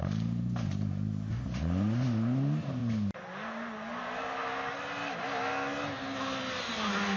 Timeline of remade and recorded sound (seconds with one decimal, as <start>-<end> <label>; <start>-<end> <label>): 0.0-7.2 recorded